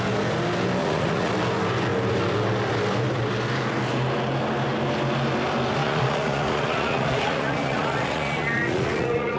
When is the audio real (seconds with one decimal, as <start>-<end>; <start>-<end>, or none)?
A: 0.0-0.8; 1.3-5.8